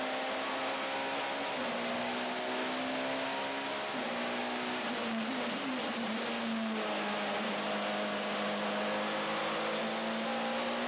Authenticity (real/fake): real